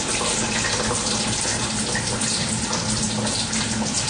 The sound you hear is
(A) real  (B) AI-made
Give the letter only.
A